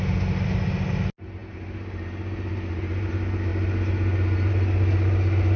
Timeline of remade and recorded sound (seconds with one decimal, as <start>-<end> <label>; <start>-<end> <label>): 0.0-1.4 recorded; 1.4-3.1 remade; 3.1-5.6 recorded